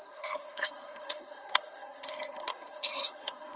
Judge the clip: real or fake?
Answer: fake